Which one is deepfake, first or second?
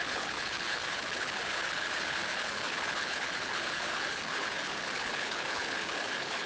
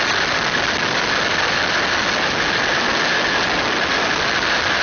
first